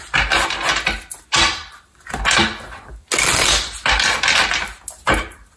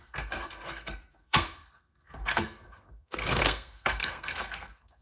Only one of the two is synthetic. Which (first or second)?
second